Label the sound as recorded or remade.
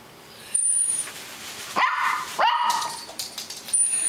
remade